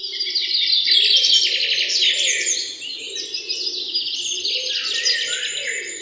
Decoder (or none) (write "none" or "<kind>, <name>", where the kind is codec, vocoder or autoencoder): none